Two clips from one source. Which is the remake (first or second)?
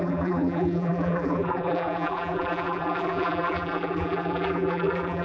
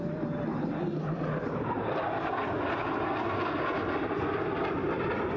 first